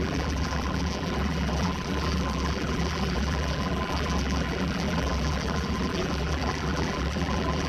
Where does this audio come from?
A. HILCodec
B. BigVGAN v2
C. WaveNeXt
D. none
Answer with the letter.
B